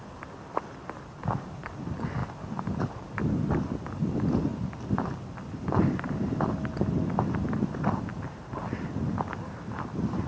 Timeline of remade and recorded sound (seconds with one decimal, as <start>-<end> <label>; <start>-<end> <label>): 0.0-4.5 recorded; 4.5-6.7 remade; 6.7-10.3 recorded